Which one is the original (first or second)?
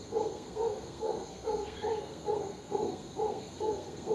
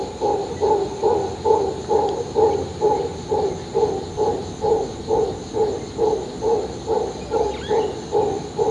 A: second